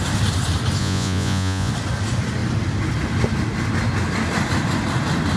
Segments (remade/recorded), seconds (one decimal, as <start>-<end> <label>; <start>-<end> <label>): 0.0-0.8 recorded; 0.8-1.7 remade; 1.7-5.4 recorded